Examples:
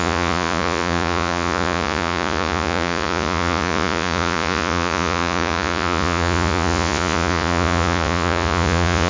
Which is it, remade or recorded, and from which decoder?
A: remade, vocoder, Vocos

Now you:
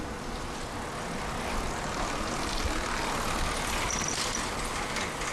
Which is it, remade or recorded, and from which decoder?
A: recorded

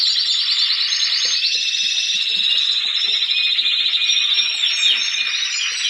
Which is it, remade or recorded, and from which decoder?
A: recorded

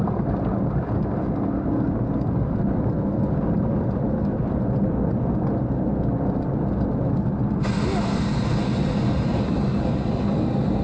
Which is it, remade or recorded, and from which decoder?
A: recorded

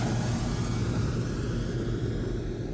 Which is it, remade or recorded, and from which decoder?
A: recorded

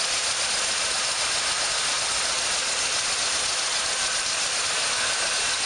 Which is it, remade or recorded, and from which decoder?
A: recorded